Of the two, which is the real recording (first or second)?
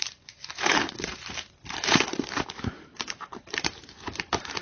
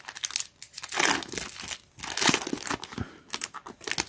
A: second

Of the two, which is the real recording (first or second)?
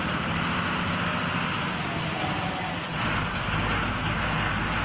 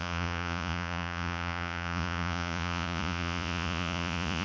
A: first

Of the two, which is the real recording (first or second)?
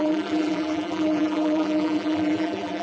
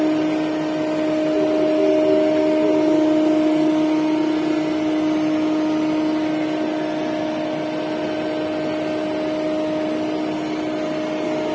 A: second